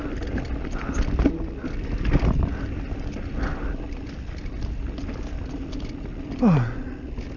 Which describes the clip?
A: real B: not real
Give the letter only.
A